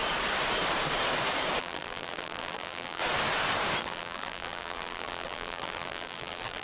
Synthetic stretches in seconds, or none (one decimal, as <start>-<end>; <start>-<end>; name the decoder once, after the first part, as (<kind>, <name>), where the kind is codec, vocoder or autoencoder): 1.6-3.0 (vocoder, BigVGAN v2); 3.8-6.6